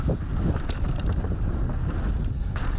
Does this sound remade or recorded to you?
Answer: recorded